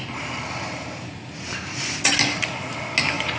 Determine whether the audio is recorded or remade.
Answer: recorded